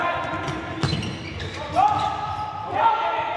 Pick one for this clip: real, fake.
real